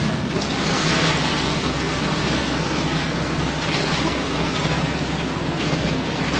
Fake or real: fake